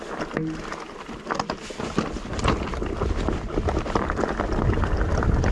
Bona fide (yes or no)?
yes